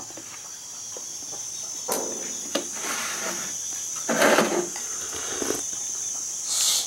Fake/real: fake